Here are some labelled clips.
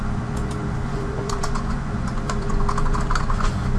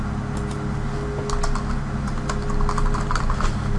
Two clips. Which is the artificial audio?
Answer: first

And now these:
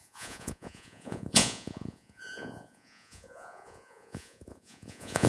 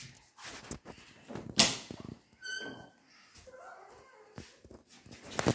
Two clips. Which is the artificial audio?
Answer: first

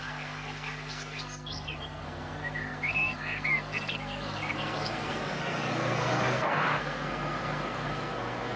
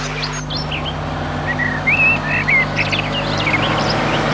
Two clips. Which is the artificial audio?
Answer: first